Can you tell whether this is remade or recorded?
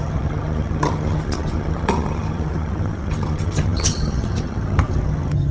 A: remade